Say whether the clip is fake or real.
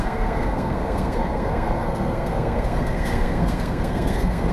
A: fake